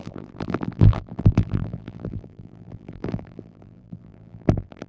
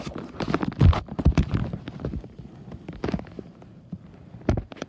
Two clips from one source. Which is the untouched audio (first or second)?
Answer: second